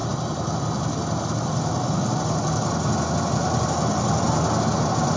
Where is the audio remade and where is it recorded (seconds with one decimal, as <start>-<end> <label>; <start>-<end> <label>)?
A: 0.0-5.2 recorded